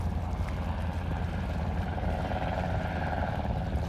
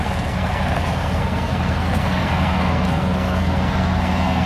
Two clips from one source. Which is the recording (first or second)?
first